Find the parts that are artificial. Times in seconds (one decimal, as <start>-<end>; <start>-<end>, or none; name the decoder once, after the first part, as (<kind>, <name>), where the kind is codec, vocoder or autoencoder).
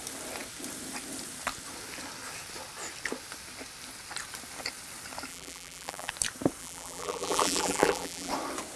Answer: 5.3-6.1 (vocoder, BigVGAN v2); 6.6-8.3